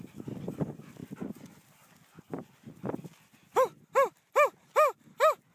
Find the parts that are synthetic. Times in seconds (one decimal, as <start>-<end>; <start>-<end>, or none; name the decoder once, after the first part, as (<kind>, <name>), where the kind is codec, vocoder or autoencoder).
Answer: none